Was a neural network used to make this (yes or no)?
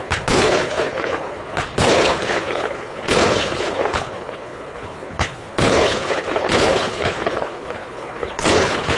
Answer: yes